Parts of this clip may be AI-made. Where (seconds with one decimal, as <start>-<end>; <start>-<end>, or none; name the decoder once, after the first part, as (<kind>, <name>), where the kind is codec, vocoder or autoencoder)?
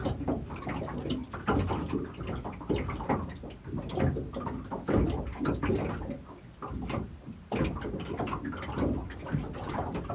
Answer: none